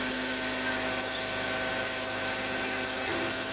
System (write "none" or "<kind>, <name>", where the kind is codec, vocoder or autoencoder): none